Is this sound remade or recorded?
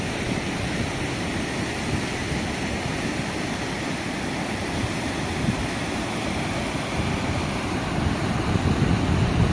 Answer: recorded